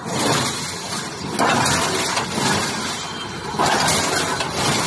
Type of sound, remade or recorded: recorded